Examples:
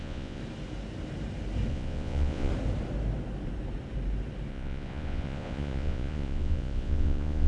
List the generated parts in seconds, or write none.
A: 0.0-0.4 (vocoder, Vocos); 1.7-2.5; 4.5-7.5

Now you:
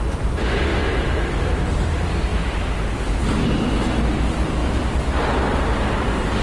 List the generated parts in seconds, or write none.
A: none

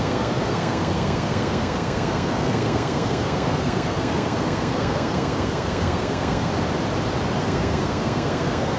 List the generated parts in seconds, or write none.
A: 0.0-6.5 (codec, SNAC); 7.4-8.8

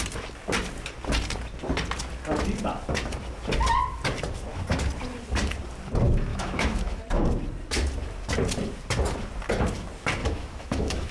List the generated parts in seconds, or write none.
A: 6.3-7.0 (autoencoder, DAC-VAE); 10.2-11.1

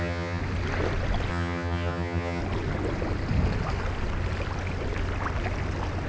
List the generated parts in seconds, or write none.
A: 0.0-0.4 (vocoder, HiFi-GAN); 1.3-2.4